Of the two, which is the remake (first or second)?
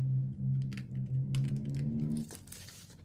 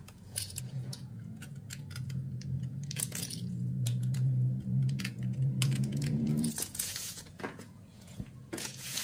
second